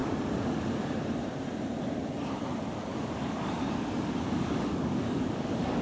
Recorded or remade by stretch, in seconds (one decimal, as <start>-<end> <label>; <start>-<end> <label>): 0.0-2.9 recorded; 2.9-5.8 remade